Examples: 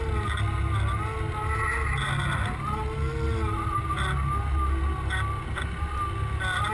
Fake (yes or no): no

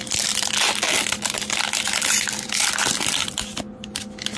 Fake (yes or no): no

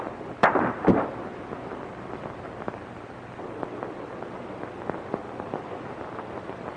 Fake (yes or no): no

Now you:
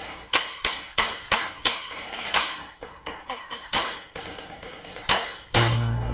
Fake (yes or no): yes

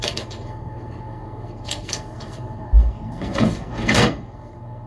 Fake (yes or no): yes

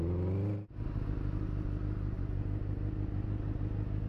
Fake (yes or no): no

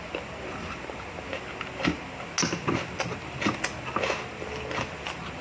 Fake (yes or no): no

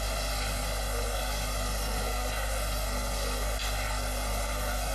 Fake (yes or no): yes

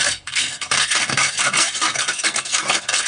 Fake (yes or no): yes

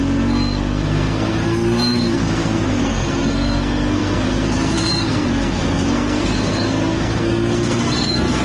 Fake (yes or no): yes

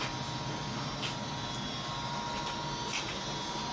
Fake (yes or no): no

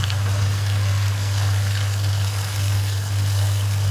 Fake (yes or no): yes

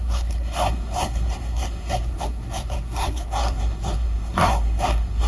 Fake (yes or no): yes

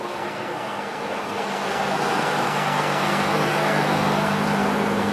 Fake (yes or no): yes